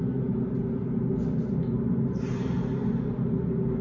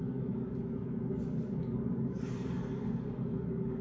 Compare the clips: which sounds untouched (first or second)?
first